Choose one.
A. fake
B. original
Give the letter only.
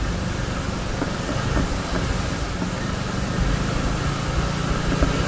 B